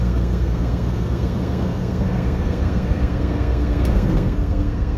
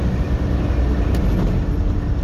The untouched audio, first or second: second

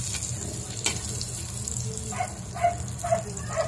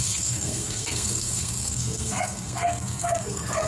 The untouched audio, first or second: first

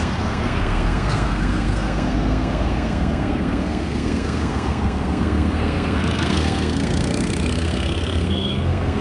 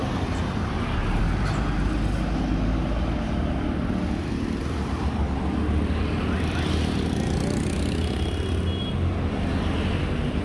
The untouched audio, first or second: second